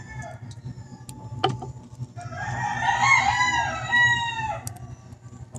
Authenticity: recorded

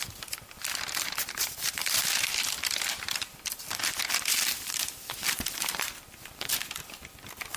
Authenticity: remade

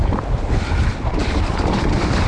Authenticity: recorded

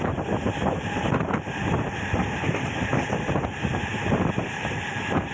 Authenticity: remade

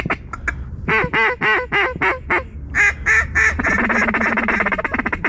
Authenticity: recorded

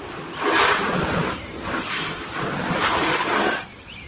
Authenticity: remade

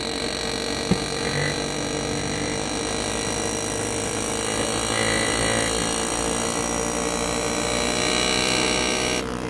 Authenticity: recorded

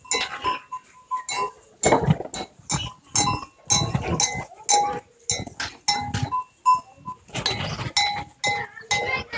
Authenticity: recorded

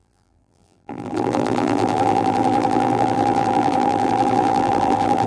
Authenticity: remade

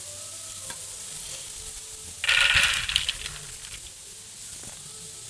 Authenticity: recorded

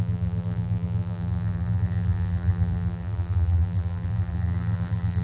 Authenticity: remade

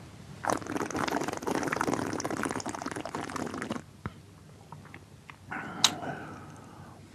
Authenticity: recorded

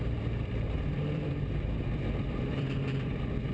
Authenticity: remade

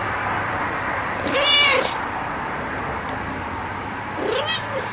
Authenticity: remade